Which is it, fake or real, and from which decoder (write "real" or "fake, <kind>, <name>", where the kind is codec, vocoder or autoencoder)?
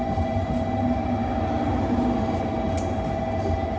real